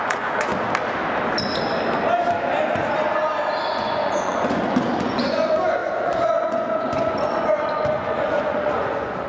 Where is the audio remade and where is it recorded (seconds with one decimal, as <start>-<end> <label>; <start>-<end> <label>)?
0.0-0.5 remade; 0.5-3.7 recorded; 3.7-9.3 remade